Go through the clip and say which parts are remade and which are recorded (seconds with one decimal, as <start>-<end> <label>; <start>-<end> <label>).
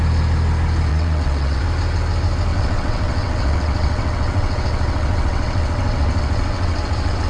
0.0-0.9 recorded; 0.9-1.6 remade; 1.6-2.5 recorded; 2.5-7.3 remade